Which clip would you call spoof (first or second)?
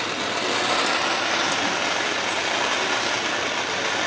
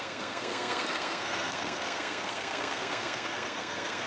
second